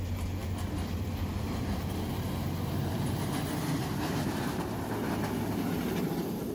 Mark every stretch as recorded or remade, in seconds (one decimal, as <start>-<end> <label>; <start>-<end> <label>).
0.0-3.8 recorded; 3.8-4.8 remade; 4.8-6.5 recorded